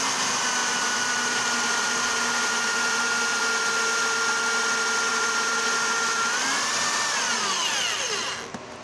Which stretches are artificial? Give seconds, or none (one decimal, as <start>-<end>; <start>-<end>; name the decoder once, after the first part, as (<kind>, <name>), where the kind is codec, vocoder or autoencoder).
0.6-3.4 (vocoder, BigVGAN v2); 5.1-6.3

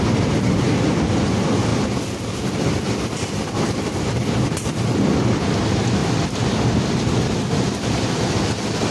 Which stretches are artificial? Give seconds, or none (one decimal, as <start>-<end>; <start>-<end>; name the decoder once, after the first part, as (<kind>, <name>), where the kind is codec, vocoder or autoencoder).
0.0-1.7 (vocoder, BigVGAN v2); 2.4-6.0; 7.7-8.9

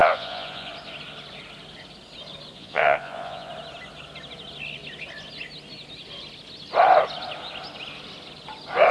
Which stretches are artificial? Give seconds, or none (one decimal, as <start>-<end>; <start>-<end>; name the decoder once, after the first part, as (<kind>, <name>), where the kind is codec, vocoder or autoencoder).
0.0-0.7 (vocoder, Vocos); 2.5-3.5

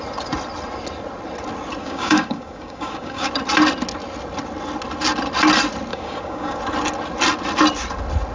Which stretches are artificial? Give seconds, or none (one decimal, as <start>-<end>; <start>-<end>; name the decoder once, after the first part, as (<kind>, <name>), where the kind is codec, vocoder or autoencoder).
1.8-3.3 (codec, DAC); 5.9-6.6